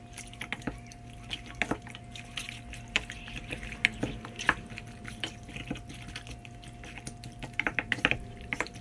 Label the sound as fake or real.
real